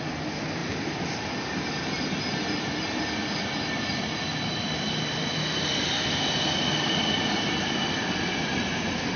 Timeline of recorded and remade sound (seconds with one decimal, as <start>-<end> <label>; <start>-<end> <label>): 0.0-9.2 recorded